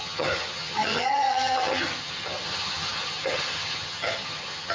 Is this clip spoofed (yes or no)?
yes